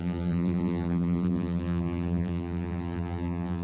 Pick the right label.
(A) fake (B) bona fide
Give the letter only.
A